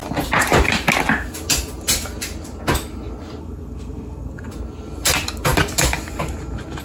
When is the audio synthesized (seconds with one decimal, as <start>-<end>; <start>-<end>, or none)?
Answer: 3.4-4.5